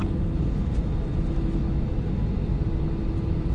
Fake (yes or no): no